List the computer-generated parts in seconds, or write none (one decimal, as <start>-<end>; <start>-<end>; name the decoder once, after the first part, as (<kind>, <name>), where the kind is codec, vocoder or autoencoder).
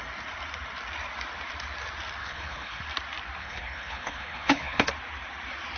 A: 2.2-2.8 (codec, HILCodec); 3.4-4.9